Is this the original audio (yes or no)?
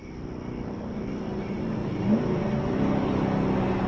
yes